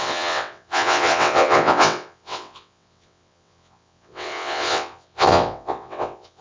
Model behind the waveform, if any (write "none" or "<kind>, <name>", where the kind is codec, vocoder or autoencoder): vocoder, WaveNeXt